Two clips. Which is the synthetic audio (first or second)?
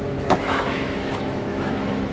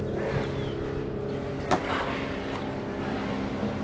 first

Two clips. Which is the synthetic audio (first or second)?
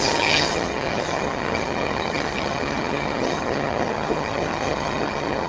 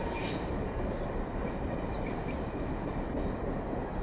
first